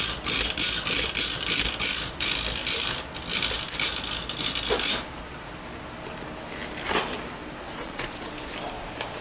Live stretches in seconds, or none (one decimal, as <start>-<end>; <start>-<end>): 0.0-7.7; 8.3-9.2